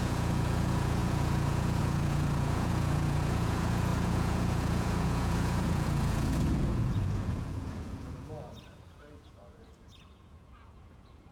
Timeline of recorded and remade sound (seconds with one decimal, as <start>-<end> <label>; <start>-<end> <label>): 0.0-11.3 remade